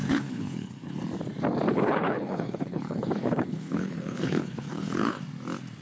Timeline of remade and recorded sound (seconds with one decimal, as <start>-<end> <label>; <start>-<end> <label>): 0.0-1.0 remade; 1.0-1.7 recorded; 1.7-5.2 remade; 5.2-5.8 recorded